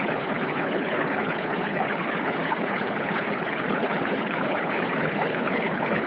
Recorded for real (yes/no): no